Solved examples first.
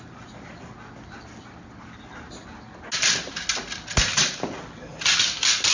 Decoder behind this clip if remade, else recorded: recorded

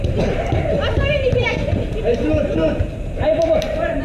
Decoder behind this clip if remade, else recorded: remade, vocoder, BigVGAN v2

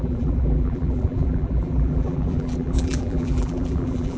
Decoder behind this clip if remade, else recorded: remade, vocoder, BigVGAN v2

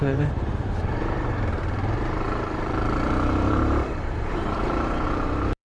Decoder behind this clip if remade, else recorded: remade, vocoder, BigVGAN v2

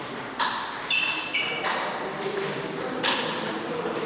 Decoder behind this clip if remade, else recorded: recorded